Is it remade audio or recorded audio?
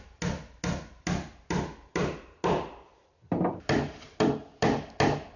recorded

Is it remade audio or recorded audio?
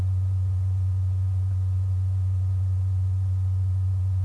remade